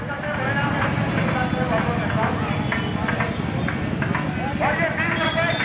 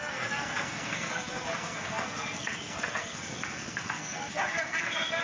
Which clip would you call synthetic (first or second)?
second